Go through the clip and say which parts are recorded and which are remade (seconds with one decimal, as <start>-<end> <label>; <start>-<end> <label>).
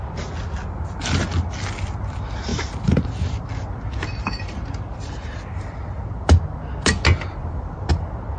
0.0-2.5 recorded; 2.5-6.4 remade; 6.4-7.4 recorded; 7.4-7.9 remade; 7.9-8.4 recorded